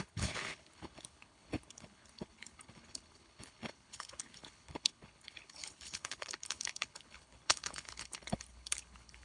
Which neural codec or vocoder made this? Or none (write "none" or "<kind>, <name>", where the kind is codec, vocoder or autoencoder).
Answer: codec, HILCodec